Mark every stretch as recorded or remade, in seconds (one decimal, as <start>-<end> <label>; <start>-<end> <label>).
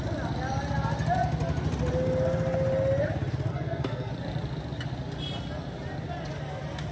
0.0-3.5 recorded; 3.5-4.1 remade; 4.1-6.9 recorded